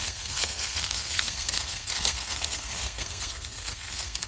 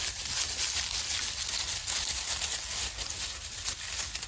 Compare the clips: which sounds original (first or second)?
second